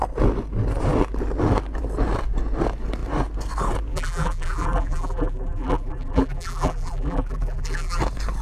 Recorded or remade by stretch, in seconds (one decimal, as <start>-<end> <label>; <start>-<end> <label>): 0.0-3.9 recorded; 3.9-8.0 remade; 8.0-8.4 recorded